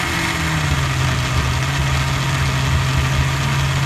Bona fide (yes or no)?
yes